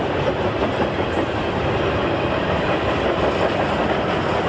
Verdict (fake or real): real